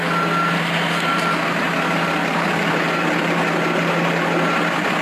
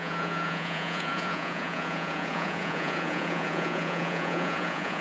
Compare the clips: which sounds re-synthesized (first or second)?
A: second